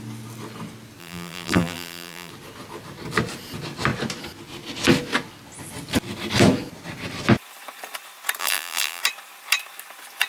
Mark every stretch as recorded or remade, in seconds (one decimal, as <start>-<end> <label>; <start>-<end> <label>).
0.0-1.0 recorded; 1.0-2.3 remade; 2.3-8.4 recorded; 8.4-9.0 remade; 9.0-10.3 recorded